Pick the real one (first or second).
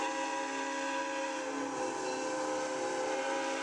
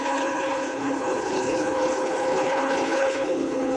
first